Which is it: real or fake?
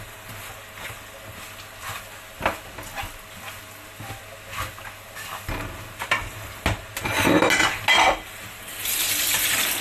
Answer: real